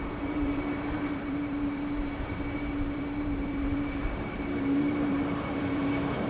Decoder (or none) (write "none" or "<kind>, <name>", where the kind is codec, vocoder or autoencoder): vocoder, BigVGAN v2